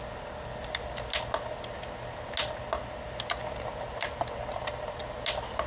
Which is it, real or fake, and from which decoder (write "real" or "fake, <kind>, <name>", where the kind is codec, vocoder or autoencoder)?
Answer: real